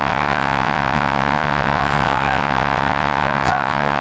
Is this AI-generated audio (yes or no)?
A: yes